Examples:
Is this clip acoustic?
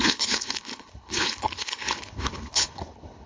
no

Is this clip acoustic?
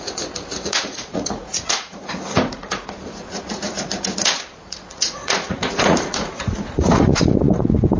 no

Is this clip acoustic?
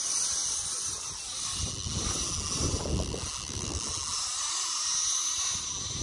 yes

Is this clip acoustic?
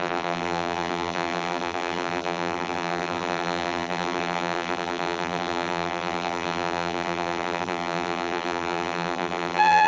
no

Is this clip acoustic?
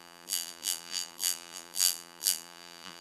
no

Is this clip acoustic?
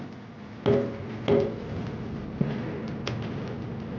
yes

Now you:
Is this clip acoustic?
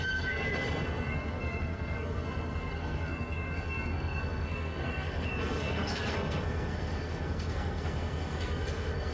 no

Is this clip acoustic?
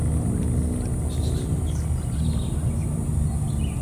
yes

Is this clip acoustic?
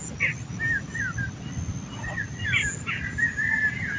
yes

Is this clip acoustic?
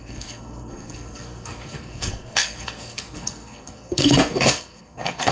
no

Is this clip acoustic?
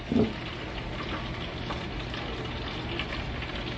yes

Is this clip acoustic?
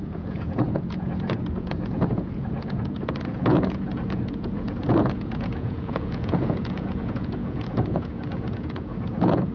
no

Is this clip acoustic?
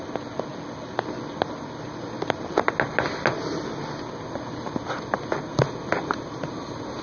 yes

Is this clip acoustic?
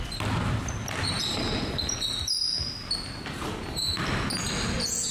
yes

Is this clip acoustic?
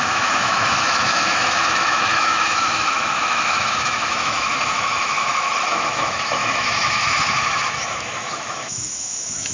no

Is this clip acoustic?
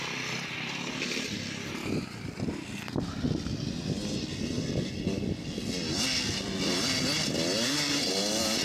yes